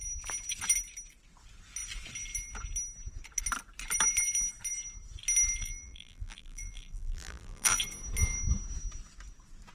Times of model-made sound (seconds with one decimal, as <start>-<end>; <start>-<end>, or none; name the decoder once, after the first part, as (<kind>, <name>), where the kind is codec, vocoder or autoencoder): 5.6-7.8 (vocoder, BigVGAN v2)